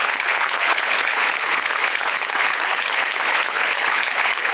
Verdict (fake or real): fake